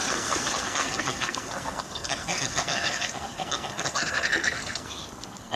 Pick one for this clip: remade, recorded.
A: remade